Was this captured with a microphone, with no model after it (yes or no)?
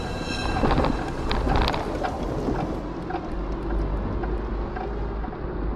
yes